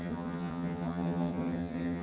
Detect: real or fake fake